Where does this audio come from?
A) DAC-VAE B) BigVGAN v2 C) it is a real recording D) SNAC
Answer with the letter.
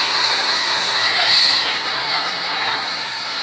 D